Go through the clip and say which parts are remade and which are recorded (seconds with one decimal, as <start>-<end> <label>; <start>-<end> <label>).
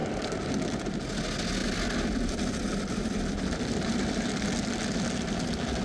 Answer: 0.0-0.8 remade; 0.8-1.6 recorded; 1.6-4.4 remade; 4.4-5.8 recorded